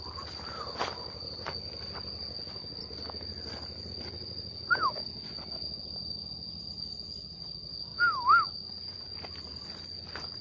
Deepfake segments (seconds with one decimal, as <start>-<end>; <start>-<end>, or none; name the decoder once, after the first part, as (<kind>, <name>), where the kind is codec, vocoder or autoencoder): none